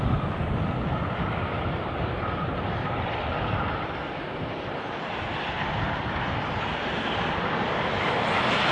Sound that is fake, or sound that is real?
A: real